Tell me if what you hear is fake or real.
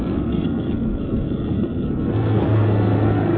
fake